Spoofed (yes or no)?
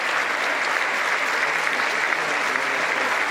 no